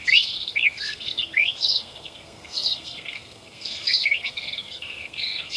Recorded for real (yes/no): no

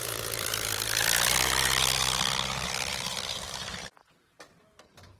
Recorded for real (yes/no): no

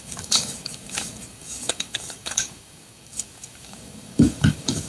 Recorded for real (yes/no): no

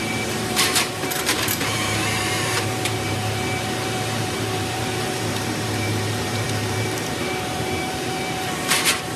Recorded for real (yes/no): no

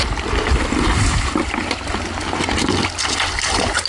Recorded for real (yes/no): yes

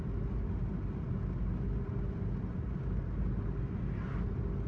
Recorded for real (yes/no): yes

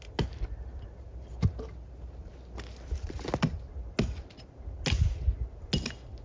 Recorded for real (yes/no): yes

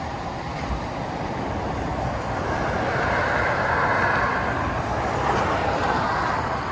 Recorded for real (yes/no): yes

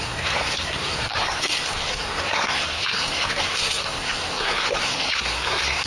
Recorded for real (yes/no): no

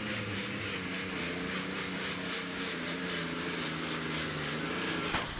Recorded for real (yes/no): yes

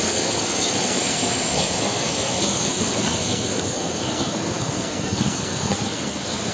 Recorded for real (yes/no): no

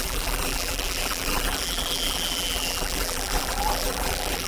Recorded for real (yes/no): no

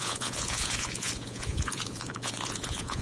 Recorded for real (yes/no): no